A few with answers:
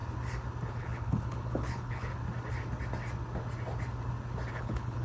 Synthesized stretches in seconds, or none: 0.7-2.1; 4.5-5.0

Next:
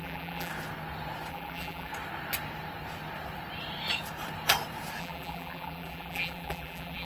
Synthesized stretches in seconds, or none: 0.0-0.5; 1.3-1.9; 5.0-7.0

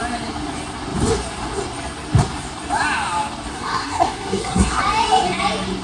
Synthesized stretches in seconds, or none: 3.5-4.8

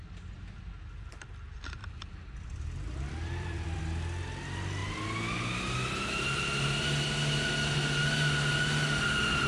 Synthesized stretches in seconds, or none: 1.8-3.8

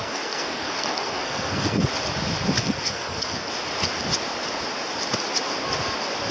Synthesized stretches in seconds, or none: 0.0-1.9; 2.6-3.5

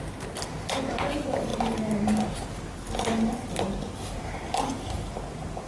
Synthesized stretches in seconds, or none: none